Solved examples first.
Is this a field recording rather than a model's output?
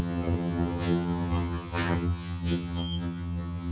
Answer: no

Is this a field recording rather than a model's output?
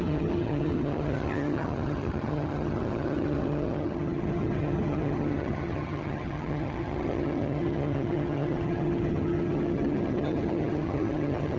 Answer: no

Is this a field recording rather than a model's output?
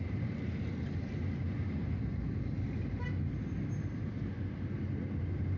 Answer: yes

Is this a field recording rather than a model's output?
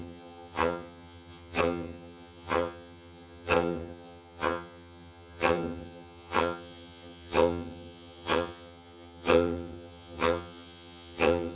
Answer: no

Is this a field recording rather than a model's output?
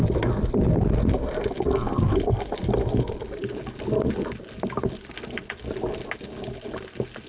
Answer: yes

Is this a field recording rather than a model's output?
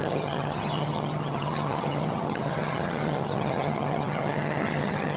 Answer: no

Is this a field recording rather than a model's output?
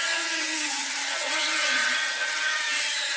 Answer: no